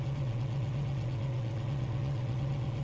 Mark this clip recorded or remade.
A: remade